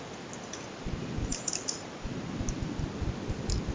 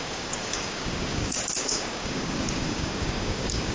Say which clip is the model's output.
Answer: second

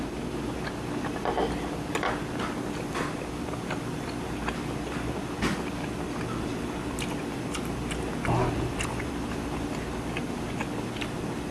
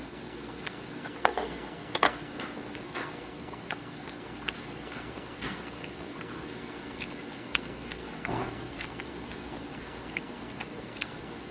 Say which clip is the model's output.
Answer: second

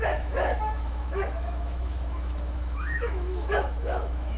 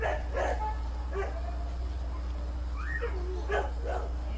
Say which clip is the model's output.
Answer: first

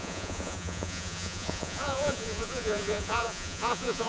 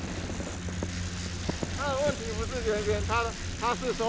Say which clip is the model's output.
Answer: first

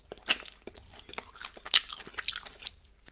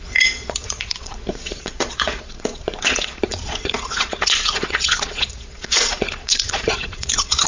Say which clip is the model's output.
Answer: second